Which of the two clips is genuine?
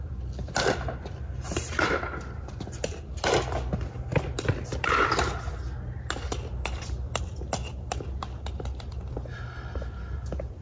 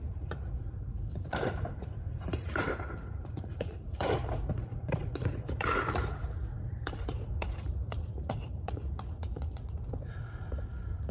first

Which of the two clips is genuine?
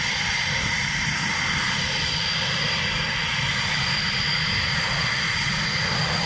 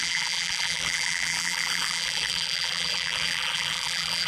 first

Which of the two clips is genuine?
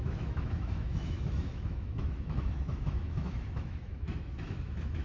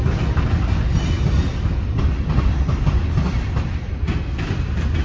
second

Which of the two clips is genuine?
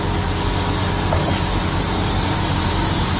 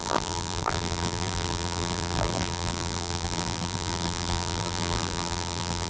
first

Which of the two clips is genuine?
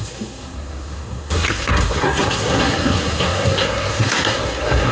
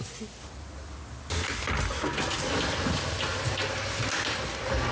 second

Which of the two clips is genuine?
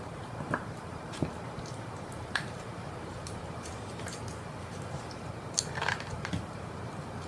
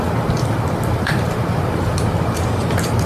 second